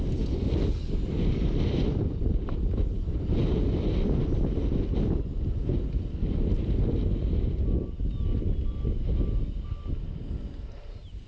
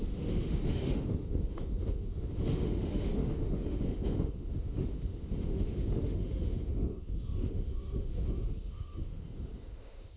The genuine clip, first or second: first